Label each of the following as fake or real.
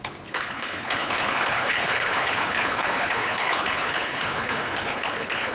fake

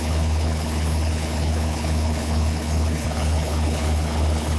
fake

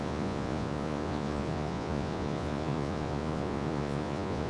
fake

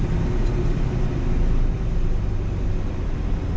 real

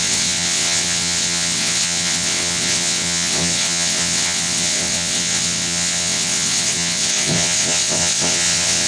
fake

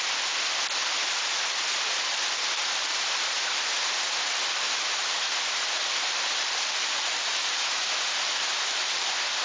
real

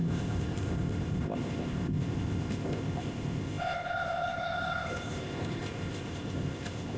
fake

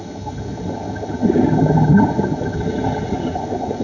fake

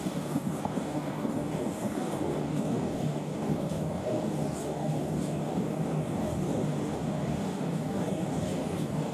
fake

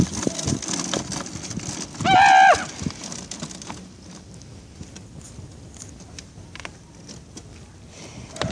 real